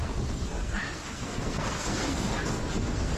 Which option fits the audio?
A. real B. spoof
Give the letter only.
B